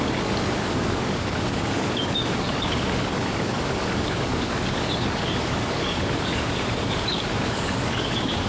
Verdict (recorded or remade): remade